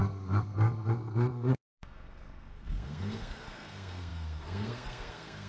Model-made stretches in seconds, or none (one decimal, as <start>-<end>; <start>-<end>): 0.0-5.5